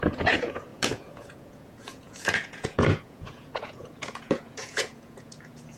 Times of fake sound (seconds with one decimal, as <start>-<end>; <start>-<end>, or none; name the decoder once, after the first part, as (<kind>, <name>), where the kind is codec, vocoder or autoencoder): 0.0-5.8 (vocoder, Vocos)